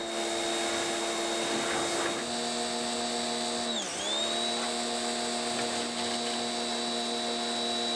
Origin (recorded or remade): recorded